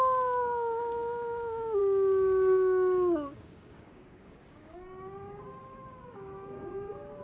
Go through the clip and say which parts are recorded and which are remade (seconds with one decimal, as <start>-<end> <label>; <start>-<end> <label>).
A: 0.0-7.2 remade